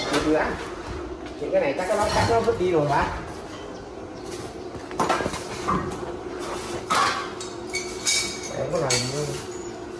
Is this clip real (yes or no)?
yes